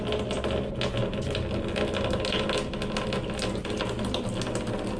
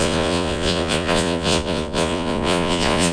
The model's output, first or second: second